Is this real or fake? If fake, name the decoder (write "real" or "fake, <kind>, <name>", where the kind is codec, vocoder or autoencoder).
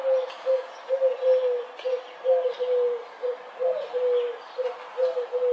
real